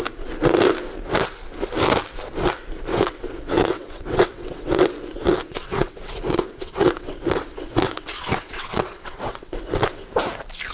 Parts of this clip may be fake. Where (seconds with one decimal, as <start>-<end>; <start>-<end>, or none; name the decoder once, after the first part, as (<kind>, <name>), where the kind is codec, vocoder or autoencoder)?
2.9-4.7 (vocoder, WaveNeXt); 5.4-9.7